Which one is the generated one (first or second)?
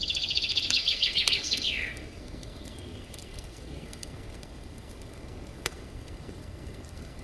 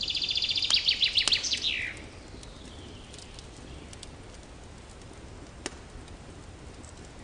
first